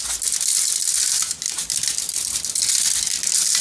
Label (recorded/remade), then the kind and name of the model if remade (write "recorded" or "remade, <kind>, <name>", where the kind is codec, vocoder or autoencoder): recorded